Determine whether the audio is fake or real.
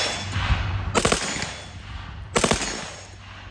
real